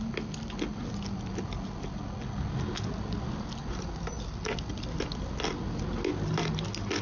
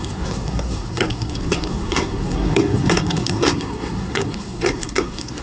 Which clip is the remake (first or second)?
second